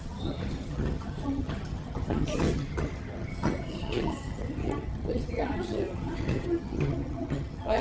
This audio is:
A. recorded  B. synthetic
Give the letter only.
B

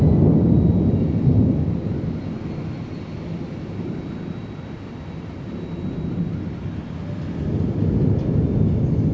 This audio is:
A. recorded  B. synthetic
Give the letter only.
A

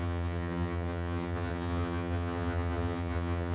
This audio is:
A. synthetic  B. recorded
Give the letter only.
A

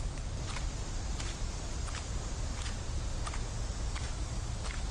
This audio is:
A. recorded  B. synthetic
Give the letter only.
A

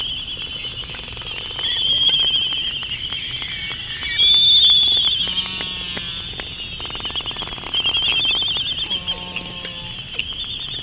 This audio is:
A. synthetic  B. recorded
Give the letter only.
B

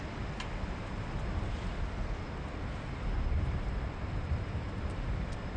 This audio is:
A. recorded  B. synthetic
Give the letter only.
A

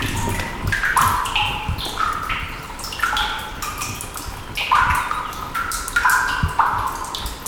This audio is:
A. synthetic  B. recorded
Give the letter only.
B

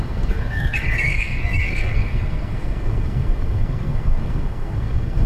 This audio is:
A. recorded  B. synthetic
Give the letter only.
B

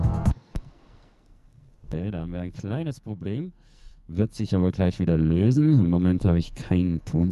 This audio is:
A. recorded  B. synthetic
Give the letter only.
B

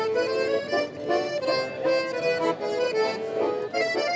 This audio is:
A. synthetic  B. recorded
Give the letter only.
B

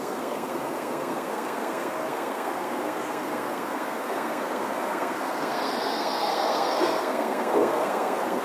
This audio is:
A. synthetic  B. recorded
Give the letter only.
A